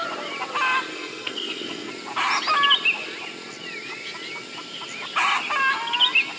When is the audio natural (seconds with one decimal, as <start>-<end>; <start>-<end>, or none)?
0.0-0.9; 1.9-6.4